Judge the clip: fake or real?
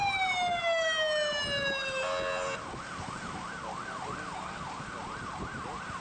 real